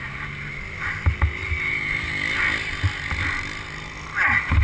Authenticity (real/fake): real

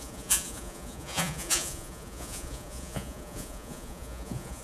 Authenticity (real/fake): fake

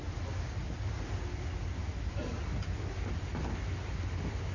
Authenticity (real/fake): real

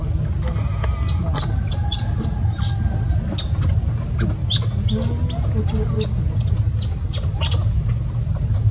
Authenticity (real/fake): real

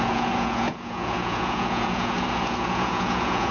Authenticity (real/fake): fake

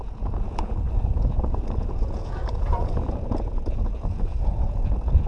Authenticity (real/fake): fake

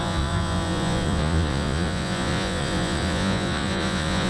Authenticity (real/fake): fake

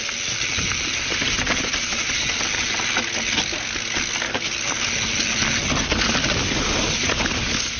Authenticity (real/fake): real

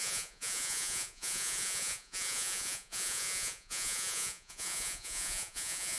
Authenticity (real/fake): fake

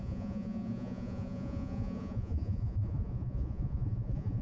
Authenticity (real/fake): fake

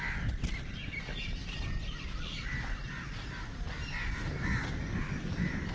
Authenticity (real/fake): real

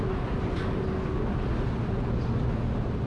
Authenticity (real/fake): real